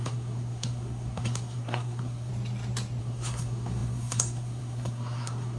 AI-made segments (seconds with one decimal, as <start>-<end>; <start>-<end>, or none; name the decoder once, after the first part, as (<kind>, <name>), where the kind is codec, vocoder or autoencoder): 0.0-2.3 (codec, SNAC); 3.0-5.6

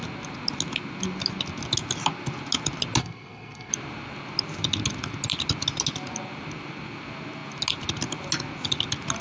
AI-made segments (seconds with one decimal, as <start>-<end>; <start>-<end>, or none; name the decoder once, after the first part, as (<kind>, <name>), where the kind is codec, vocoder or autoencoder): 3.0-3.7 (codec, SNAC)

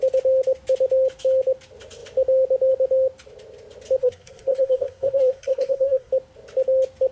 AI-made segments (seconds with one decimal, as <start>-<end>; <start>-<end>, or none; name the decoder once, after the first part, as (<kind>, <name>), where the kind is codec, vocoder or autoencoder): 4.0-6.1 (codec, SNAC)

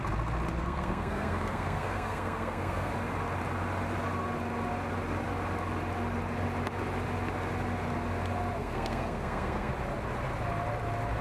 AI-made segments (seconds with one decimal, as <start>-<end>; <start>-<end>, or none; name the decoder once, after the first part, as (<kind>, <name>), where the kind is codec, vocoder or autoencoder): 0.6-2.9 (codec, SNAC); 8.6-9.7

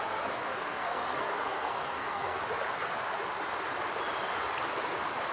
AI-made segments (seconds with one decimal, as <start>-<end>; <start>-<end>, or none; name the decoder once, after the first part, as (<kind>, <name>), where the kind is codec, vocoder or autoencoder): 0.0-2.4 (codec, SNAC)